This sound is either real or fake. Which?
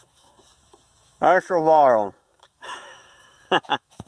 fake